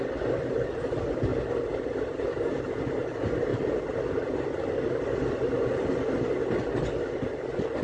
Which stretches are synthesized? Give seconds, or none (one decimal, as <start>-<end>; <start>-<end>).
none